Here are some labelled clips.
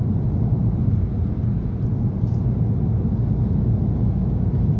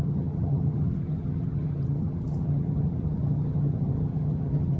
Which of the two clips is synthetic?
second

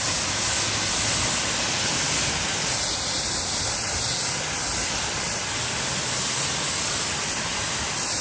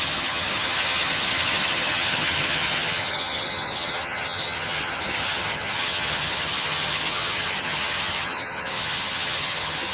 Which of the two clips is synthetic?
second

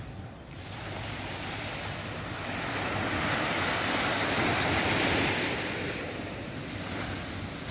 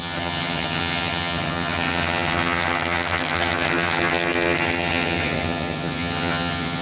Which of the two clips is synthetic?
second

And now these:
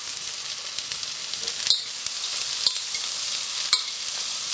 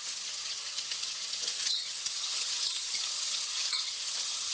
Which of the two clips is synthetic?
second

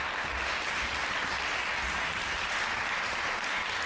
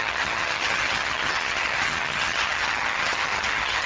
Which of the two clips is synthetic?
second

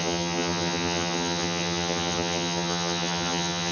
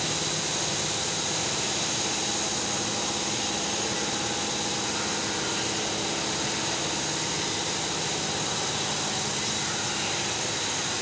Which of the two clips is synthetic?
first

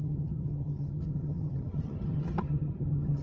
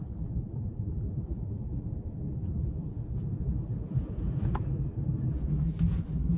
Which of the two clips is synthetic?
first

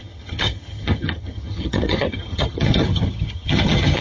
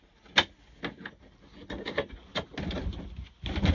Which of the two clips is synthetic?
first